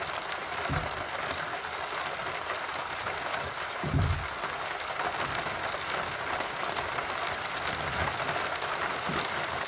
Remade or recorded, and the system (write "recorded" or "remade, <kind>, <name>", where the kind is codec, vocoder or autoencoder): recorded